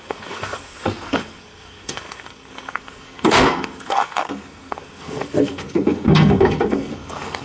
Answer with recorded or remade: remade